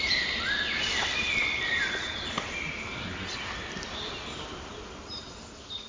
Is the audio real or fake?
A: real